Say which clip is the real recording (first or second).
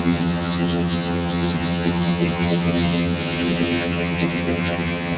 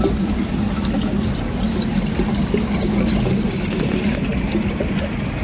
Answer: second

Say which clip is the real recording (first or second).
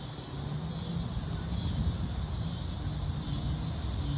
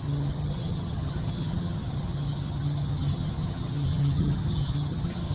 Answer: first